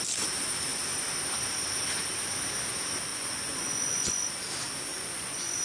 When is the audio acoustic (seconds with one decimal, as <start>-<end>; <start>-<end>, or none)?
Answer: 0.0-3.1; 4.2-4.9

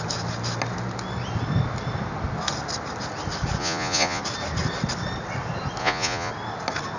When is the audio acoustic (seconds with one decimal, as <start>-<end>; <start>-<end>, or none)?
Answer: 0.0-3.6; 4.2-5.8; 6.3-7.0